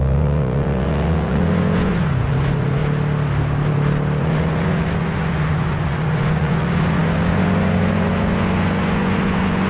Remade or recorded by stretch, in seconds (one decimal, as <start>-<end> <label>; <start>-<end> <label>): 0.0-2.8 remade; 2.8-4.2 recorded; 4.2-9.7 remade